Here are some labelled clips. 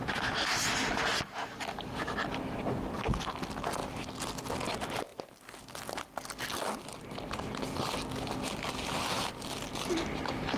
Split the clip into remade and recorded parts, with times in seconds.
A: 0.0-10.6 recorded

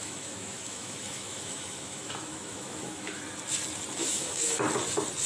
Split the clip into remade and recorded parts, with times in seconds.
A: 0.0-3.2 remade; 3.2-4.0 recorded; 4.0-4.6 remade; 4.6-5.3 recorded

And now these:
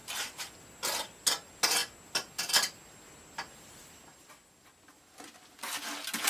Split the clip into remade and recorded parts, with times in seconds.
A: 0.0-6.3 recorded